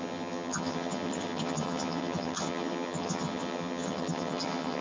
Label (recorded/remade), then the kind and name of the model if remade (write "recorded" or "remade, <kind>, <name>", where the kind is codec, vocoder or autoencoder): remade, vocoder, HiFi-GAN